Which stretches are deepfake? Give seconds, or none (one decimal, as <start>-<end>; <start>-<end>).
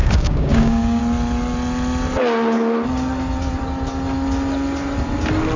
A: 0.0-1.0